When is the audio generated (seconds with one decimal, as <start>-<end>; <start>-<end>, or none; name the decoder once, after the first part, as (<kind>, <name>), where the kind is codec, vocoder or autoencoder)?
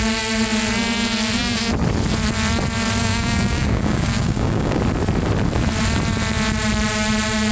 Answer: 3.0-4.8 (codec, DAC)